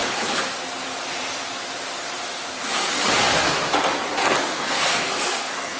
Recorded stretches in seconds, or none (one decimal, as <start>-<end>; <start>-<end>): 0.0-4.2